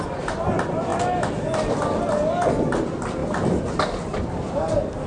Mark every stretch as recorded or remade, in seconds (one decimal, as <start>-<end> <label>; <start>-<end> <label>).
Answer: 0.0-5.1 recorded